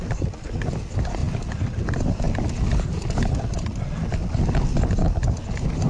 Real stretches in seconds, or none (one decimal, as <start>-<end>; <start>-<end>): 0.0-5.9